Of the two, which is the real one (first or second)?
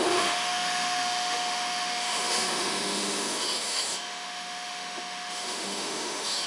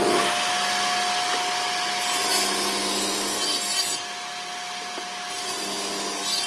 second